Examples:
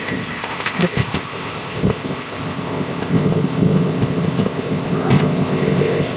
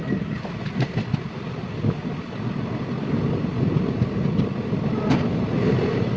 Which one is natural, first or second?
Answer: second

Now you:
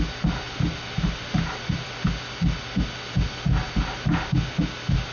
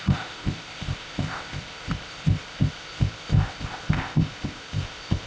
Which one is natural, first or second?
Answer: first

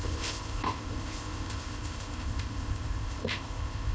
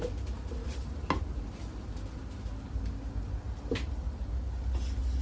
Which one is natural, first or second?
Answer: second